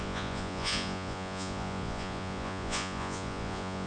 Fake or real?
fake